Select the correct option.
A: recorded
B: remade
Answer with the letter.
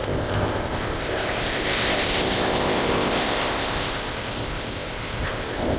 B